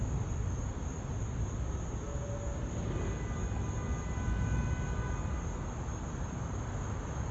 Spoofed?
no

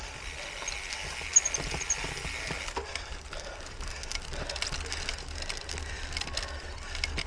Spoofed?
no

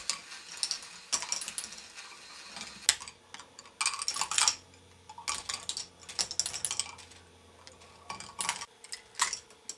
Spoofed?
no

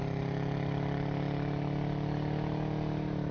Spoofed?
no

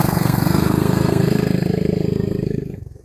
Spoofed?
yes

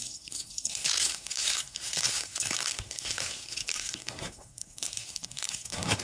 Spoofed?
yes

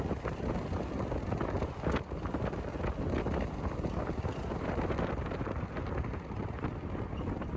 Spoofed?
no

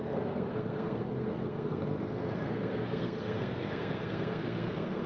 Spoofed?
yes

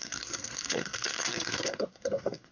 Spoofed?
yes